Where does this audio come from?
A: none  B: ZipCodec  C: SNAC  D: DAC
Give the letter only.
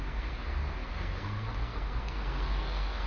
C